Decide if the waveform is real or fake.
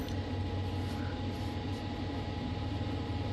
real